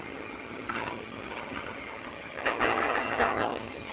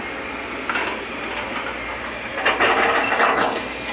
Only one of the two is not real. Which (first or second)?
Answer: first